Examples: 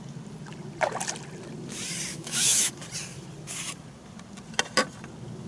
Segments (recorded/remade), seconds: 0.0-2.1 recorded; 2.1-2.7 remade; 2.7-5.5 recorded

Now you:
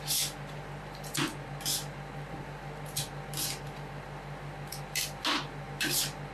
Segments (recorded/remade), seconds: 0.0-6.3 recorded